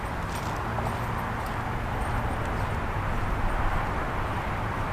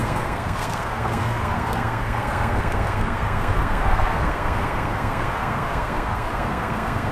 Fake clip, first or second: second